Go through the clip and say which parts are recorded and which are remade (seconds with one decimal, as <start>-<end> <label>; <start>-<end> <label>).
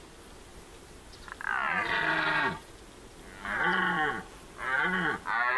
0.0-5.6 recorded